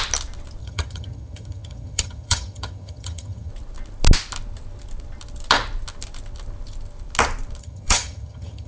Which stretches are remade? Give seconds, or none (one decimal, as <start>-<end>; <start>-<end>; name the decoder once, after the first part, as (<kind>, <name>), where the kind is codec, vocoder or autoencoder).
0.6-3.5 (vocoder, HiFi-GAN); 7.6-8.7